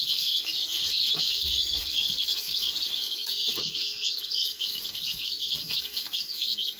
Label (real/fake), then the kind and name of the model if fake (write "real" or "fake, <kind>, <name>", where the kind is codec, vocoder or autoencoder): fake, codec, SNAC